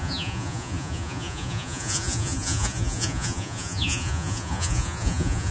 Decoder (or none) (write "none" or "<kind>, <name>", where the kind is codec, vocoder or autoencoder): vocoder, Vocos